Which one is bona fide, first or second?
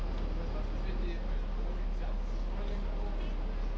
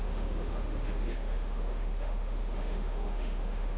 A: first